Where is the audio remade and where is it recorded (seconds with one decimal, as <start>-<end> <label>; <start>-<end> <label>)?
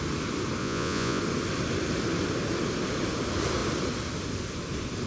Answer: 0.0-0.6 recorded; 0.6-1.2 remade; 1.2-5.1 recorded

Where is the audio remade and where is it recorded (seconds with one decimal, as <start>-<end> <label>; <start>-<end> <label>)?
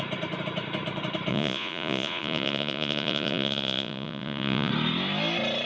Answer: 0.0-1.3 recorded; 1.3-4.7 remade; 4.7-5.7 recorded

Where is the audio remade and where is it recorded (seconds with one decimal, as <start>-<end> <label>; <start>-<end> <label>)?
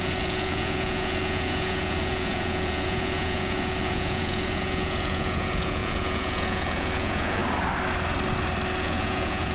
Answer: 0.0-7.4 remade; 7.4-8.8 recorded; 8.8-9.5 remade